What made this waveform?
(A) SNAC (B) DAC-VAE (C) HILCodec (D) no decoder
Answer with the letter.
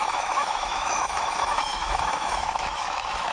B